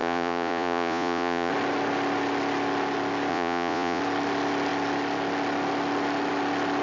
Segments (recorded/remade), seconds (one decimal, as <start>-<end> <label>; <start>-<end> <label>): 0.0-1.5 remade; 1.5-3.3 recorded; 3.3-4.0 remade; 4.0-6.8 recorded